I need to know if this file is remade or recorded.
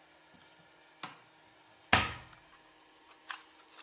recorded